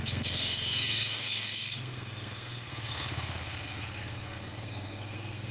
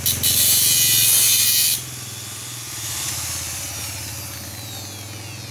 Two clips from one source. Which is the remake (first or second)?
first